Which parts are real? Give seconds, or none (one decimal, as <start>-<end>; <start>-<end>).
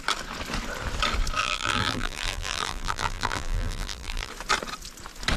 0.0-1.4; 4.3-5.4